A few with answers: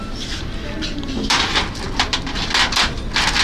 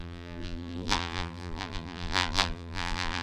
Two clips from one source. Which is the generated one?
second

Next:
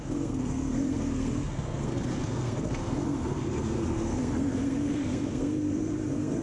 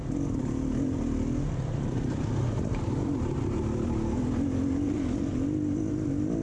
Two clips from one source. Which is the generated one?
first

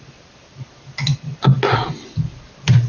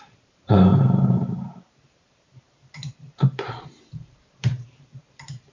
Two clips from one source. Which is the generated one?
second